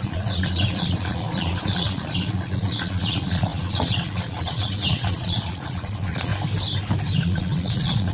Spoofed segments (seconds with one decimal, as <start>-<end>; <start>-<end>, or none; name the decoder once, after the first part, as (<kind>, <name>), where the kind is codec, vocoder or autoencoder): 0.0-6.3 (vocoder, Vocos); 7.2-8.1

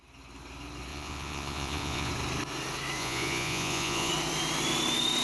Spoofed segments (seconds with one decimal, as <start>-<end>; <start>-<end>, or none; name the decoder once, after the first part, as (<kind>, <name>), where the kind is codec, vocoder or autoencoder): 0.9-2.1 (vocoder, Vocos); 3.0-4.1

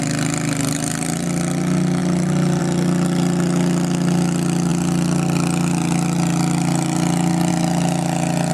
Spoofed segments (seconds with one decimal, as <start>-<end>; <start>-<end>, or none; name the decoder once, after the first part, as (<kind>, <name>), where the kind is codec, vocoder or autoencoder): none

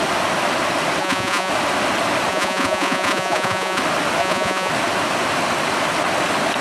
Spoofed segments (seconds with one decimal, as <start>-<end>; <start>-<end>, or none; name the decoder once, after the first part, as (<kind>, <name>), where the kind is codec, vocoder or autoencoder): 1.0-1.5 (vocoder, Vocos); 2.3-3.8; 4.2-4.7

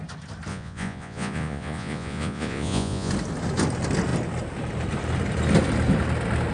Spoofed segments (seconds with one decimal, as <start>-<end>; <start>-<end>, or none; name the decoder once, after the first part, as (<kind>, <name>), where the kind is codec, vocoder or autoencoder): 0.5-3.1 (vocoder, Vocos)

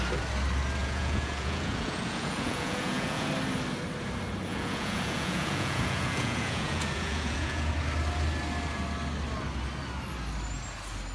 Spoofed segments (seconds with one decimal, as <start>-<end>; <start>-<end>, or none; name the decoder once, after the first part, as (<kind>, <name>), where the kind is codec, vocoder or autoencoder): 0.8-3.3 (vocoder, Vocos); 4.5-7.7